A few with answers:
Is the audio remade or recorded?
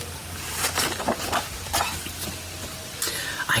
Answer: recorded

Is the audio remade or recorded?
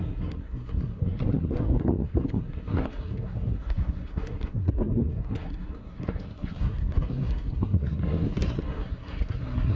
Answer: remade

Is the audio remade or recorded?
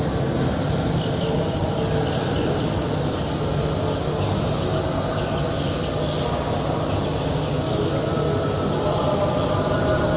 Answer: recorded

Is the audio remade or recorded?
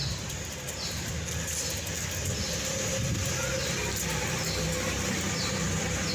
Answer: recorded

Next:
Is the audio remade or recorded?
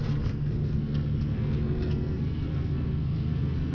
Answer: remade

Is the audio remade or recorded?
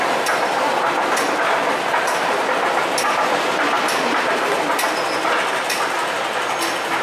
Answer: recorded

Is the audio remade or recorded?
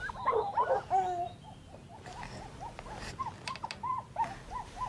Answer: recorded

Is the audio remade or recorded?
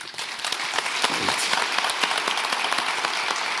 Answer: recorded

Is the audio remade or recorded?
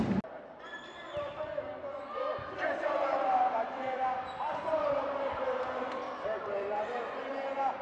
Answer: recorded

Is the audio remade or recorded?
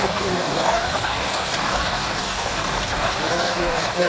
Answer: remade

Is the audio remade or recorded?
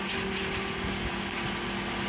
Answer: recorded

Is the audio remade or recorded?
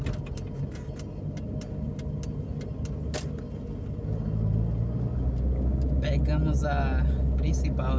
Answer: recorded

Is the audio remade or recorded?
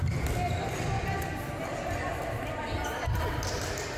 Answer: recorded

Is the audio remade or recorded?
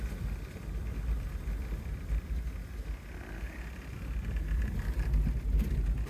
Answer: recorded